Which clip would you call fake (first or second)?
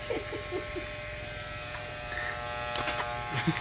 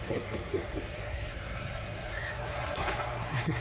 second